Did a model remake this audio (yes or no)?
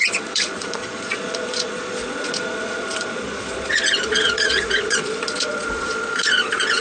yes